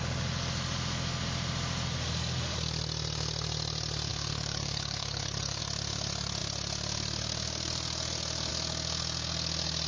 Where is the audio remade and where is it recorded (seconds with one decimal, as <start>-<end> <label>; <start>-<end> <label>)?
0.0-4.1 recorded; 4.1-5.6 remade; 5.6-9.9 recorded

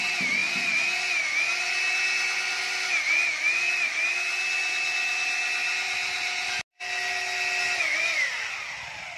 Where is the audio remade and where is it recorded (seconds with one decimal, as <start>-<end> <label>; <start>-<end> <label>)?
0.0-9.2 recorded

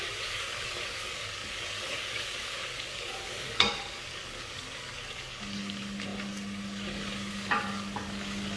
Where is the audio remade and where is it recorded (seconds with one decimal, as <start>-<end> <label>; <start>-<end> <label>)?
0.0-8.6 remade

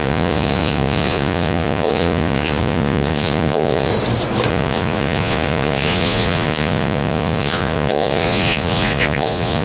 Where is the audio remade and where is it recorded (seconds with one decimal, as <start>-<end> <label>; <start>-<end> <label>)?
0.0-3.9 remade; 3.9-4.5 recorded; 4.5-9.6 remade